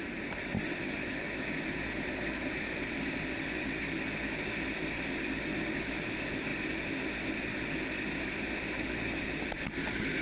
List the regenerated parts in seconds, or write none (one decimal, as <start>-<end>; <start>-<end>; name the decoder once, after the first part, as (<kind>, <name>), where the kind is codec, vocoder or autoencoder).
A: none